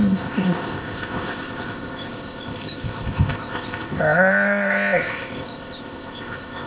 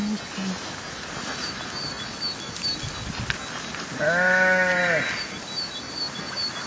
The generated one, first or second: first